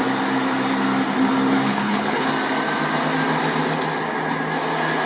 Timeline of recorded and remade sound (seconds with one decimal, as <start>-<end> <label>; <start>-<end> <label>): 0.0-1.7 recorded; 1.7-2.3 remade; 2.3-5.1 recorded